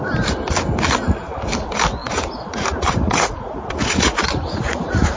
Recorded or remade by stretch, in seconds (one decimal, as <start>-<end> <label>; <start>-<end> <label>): 0.0-2.0 recorded; 2.0-5.2 remade